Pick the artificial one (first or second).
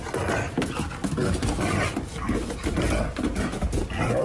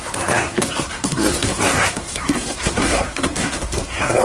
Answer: second